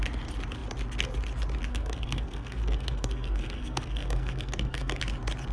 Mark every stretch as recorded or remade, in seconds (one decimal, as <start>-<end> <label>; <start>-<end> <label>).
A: 0.0-1.7 recorded; 1.7-5.0 remade; 5.0-5.5 recorded